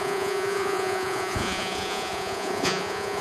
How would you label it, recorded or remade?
remade